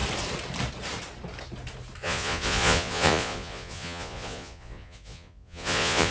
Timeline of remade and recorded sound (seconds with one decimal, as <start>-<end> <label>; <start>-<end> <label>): 0.0-2.0 recorded; 2.0-6.1 remade